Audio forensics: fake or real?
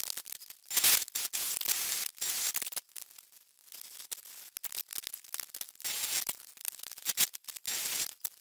real